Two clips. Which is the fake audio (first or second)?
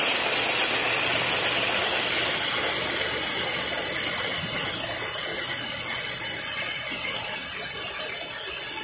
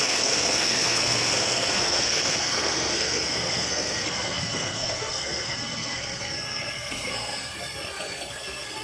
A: second